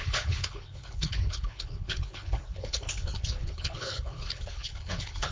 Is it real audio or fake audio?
fake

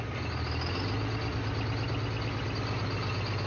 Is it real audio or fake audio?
real